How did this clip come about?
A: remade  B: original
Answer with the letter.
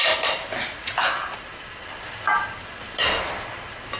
B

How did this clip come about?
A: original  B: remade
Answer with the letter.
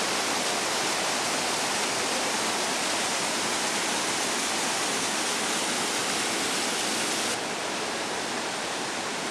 A